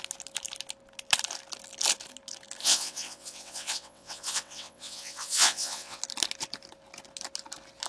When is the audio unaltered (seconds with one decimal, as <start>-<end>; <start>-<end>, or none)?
0.0-2.6; 6.0-7.9